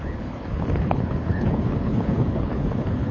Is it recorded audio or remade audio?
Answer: remade